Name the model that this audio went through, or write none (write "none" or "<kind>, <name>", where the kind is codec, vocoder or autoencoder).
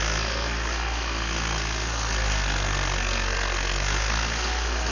codec, SNAC